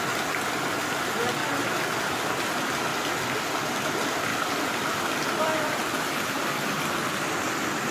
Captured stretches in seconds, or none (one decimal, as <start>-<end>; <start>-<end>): 0.0-4.3; 6.5-7.9